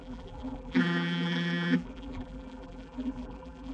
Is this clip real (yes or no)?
no